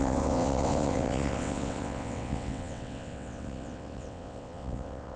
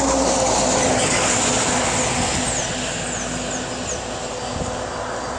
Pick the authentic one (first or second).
second